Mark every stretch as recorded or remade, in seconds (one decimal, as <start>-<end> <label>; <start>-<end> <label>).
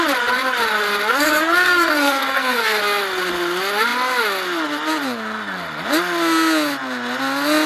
0.0-1.1 recorded; 1.1-2.8 remade; 2.8-7.7 recorded